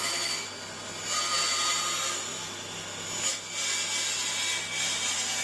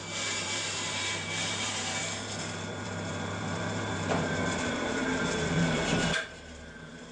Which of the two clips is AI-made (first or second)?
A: second